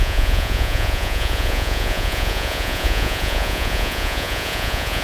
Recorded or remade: remade